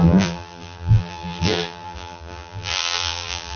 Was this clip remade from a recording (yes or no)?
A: yes